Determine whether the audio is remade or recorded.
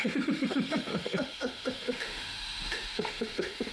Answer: remade